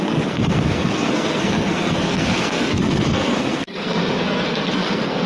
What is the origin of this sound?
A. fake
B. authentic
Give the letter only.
A